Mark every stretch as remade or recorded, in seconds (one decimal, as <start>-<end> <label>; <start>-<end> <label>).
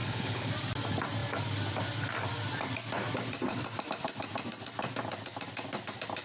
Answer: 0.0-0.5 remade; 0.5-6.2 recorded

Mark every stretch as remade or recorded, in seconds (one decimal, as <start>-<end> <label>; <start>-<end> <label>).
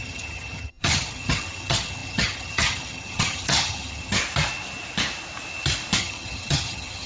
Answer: 0.0-4.2 remade; 4.2-6.0 recorded; 6.0-7.1 remade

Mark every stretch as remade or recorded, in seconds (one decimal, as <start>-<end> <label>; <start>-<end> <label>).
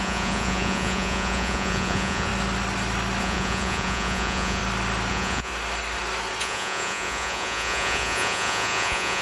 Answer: 0.0-2.3 remade; 2.3-3.2 recorded; 3.2-4.6 remade; 4.6-5.1 recorded; 5.1-5.5 remade; 5.5-6.4 recorded; 6.4-9.2 remade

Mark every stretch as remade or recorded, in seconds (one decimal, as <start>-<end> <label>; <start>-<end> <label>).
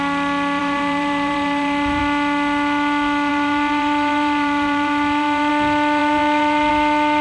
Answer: 0.0-0.6 recorded; 0.6-2.0 remade; 2.0-3.3 recorded; 3.3-5.5 remade; 5.5-6.0 recorded; 6.0-6.7 remade; 6.7-7.2 recorded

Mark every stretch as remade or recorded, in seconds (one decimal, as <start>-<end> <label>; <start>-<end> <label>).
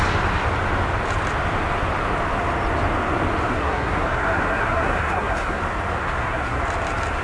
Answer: 0.0-3.5 recorded; 3.5-5.6 remade; 5.6-6.0 recorded; 6.0-6.6 remade; 6.6-7.2 recorded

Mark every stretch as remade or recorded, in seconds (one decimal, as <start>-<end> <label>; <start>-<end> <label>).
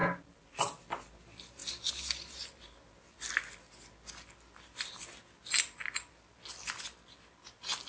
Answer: 0.0-7.9 recorded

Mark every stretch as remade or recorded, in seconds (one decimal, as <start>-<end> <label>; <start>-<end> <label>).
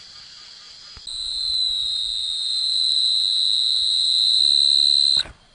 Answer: 0.0-1.1 recorded; 1.1-4.4 remade; 4.4-5.5 recorded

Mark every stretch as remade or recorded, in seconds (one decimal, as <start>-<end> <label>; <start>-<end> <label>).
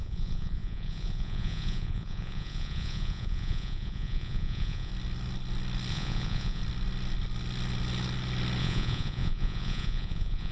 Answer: 0.0-4.9 remade; 4.9-5.9 recorded; 5.9-6.6 remade; 6.6-8.6 recorded; 8.6-10.5 remade